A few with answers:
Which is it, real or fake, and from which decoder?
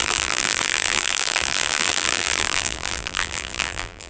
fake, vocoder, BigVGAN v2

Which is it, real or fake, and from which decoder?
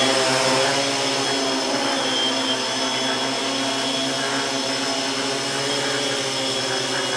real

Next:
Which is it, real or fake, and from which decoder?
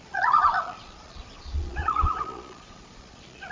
fake, vocoder, Vocos